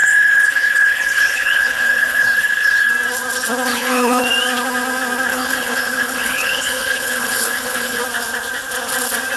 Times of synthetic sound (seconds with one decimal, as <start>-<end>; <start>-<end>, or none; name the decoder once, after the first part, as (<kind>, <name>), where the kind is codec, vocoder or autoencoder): 0.0-2.9 (codec, HILCodec); 3.7-4.2; 5.3-8.0